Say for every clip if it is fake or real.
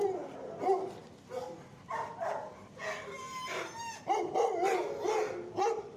real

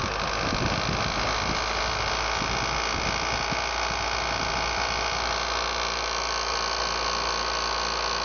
real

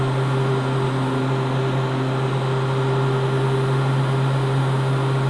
real